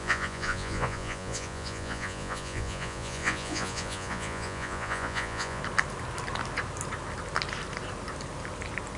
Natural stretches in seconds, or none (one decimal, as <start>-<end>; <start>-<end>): 5.6-9.0